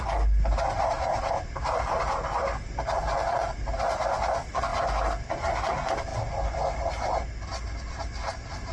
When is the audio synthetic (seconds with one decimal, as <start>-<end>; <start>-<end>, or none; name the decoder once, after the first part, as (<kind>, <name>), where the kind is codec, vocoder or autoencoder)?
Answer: none